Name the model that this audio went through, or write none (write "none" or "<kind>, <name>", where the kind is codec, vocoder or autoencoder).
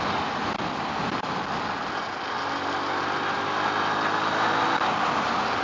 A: none